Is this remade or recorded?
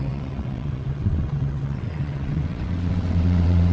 remade